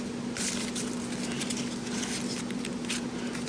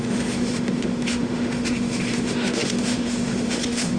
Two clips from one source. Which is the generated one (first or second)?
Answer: second